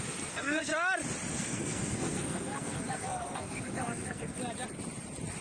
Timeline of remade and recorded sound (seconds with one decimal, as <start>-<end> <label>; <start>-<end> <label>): 0.0-0.7 remade; 0.7-1.3 recorded; 1.3-4.4 remade; 4.4-5.4 recorded